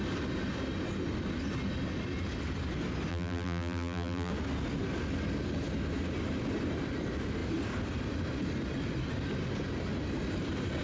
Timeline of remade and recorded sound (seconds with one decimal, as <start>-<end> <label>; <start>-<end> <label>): 0.0-3.1 recorded; 3.1-4.3 remade; 4.3-10.8 recorded